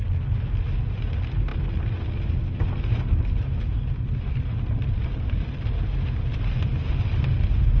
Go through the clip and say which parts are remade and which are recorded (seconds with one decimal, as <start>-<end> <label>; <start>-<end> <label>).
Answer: 0.0-7.8 recorded